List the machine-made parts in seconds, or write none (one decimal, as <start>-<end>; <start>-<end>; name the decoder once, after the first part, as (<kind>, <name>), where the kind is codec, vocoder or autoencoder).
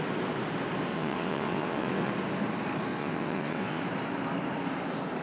0.9-2.1 (vocoder, WaveNeXt); 2.9-3.8